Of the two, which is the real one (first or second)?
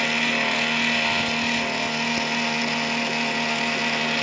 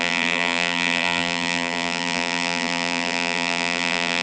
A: first